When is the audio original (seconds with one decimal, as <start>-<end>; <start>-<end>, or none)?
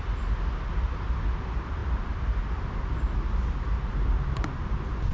0.0-5.1